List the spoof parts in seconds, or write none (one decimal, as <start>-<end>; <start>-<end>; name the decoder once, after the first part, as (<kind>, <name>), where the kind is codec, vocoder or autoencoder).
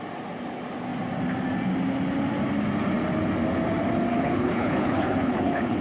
4.1-5.8 (codec, HILCodec)